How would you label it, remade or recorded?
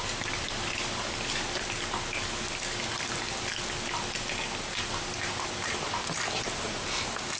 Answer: recorded